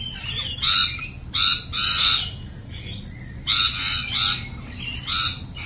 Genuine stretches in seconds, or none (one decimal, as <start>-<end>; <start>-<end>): 0.0-5.7